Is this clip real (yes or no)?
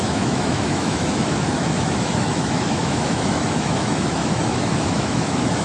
no